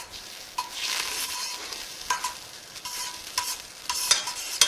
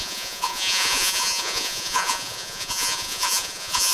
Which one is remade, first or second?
second